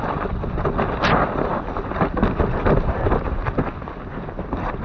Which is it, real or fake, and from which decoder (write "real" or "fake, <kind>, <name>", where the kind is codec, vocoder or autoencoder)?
real